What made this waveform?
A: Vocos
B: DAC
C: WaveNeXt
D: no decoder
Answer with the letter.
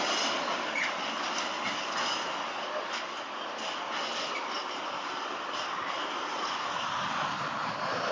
D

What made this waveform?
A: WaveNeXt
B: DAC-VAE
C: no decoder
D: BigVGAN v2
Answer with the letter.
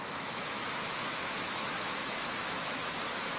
B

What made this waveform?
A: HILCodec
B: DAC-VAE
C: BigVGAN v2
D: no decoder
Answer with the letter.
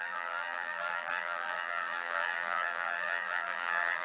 C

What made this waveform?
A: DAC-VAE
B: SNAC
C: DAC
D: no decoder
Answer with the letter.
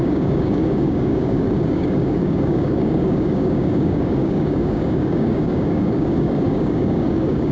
C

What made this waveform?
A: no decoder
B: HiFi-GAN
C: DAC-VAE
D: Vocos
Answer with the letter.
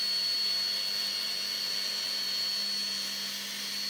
A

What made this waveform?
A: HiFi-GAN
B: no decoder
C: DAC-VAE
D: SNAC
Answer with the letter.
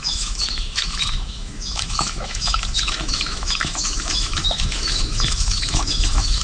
C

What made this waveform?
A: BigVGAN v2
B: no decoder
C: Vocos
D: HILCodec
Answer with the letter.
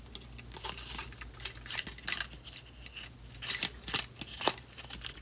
B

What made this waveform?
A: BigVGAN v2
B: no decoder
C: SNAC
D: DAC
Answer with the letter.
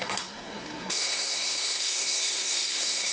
C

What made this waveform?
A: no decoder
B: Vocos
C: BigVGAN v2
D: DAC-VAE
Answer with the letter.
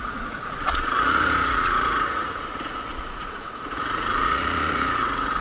B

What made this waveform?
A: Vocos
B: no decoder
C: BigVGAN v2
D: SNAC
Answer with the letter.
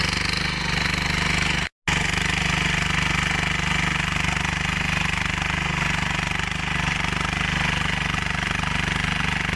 B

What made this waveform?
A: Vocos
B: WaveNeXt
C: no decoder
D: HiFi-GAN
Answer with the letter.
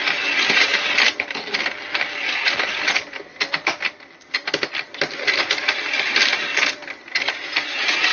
C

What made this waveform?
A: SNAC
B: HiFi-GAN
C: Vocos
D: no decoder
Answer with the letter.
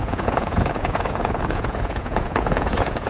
C